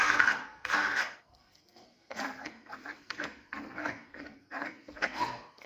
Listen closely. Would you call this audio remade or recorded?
remade